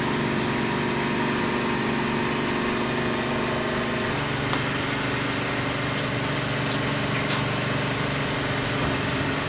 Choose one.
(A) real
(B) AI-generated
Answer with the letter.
A